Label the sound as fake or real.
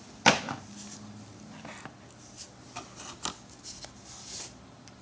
real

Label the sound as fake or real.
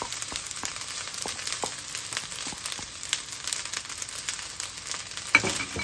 real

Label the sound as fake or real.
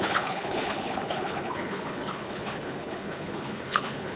fake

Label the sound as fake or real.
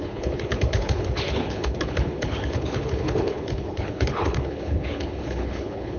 fake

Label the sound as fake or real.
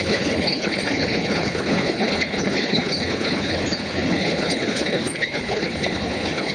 fake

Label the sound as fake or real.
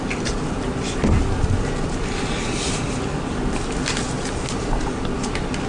real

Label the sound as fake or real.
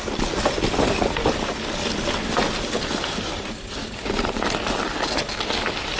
real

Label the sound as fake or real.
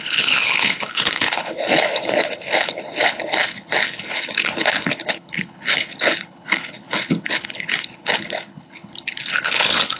fake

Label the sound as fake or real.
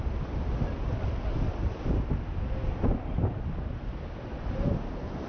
real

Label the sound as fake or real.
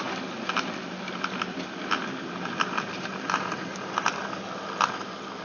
real